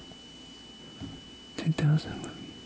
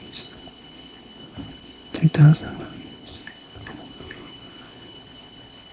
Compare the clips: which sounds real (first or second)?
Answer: first